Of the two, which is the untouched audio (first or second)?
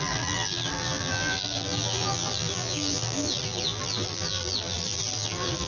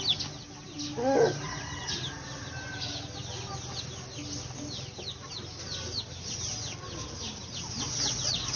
second